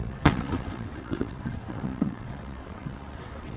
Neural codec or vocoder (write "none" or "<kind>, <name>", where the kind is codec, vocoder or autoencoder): vocoder, WaveNeXt